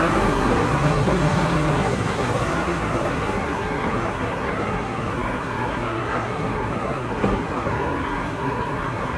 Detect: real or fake fake